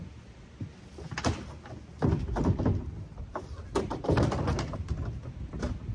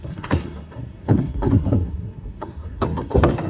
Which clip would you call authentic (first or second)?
first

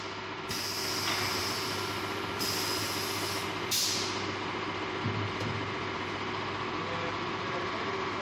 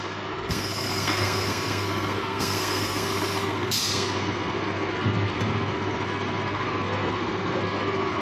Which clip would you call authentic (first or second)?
first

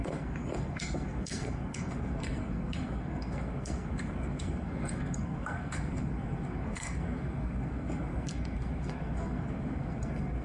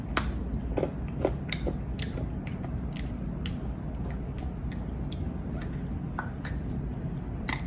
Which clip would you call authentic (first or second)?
second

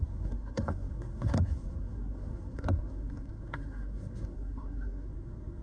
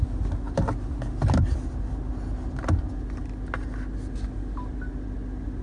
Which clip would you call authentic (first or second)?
second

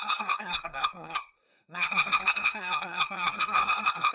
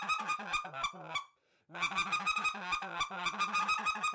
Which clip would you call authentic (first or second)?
second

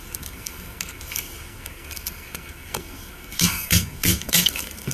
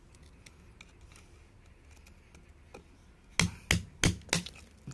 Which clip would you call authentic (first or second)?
second